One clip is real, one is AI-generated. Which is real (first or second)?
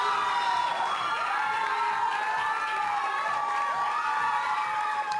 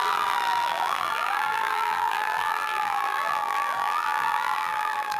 first